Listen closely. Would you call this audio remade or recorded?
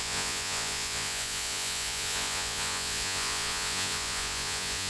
remade